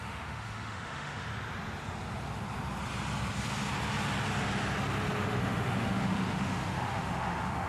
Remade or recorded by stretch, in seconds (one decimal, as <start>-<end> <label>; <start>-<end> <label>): 0.0-1.3 remade; 1.3-5.2 recorded; 5.2-7.7 remade